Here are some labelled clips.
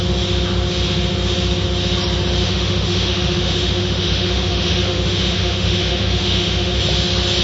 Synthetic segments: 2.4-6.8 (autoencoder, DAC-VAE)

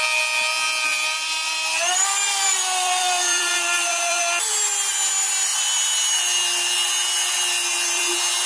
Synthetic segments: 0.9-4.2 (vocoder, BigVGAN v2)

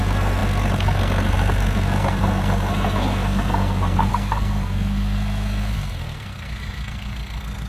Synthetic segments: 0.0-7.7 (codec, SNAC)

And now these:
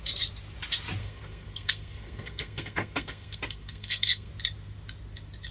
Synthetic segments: 1.0-4.3 (codec, SNAC)

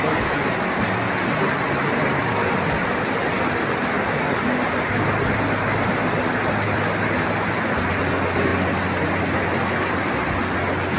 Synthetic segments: none

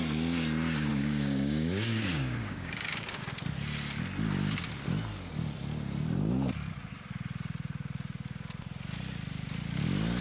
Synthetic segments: 0.9-3.2 (codec, DAC)